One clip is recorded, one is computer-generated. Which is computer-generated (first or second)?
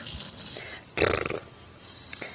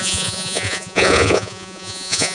second